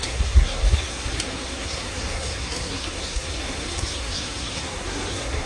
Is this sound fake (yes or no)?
yes